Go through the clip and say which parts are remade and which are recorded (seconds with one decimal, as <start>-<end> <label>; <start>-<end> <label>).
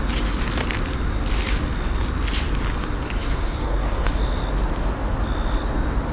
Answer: 0.0-3.3 recorded; 3.3-4.1 remade; 4.1-6.1 recorded